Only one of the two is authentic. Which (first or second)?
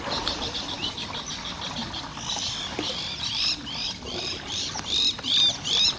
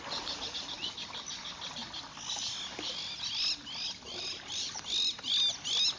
second